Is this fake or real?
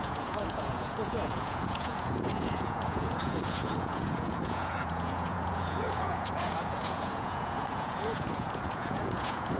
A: fake